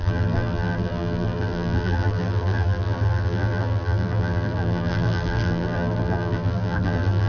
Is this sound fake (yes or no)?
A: yes